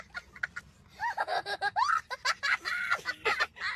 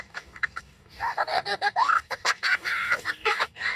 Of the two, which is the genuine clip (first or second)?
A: first